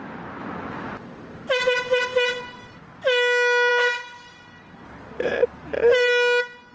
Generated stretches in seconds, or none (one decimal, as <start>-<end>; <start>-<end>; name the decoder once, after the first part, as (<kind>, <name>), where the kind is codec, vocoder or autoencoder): none